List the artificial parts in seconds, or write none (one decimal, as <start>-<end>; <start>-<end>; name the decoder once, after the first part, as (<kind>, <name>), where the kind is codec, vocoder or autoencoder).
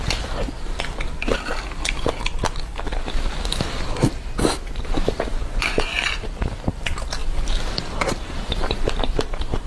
5.3-6.1 (vocoder, Vocos)